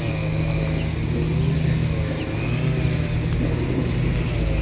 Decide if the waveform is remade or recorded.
recorded